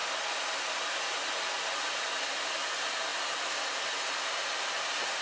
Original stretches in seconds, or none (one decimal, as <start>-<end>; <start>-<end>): 0.0-5.2